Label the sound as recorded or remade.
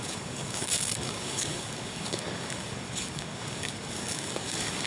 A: remade